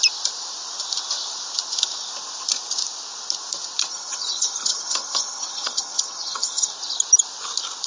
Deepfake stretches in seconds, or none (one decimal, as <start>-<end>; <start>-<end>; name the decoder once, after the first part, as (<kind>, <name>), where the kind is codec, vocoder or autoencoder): 3.9-6.7 (vocoder, HiFi-GAN)